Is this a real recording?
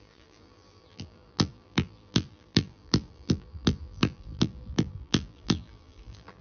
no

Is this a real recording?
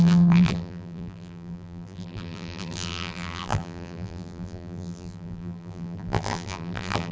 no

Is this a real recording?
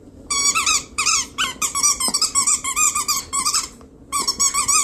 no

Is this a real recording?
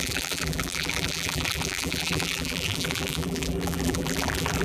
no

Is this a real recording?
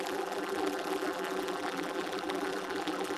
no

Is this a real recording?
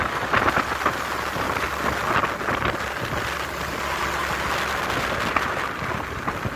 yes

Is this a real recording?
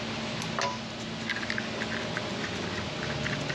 yes